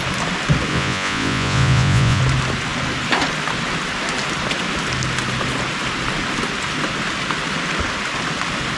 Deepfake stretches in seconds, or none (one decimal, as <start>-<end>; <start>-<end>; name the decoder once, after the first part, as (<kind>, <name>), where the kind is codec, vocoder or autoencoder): 0.7-2.2 (vocoder, Vocos)